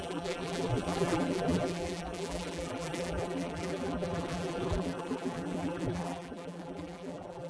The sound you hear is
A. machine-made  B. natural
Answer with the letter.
A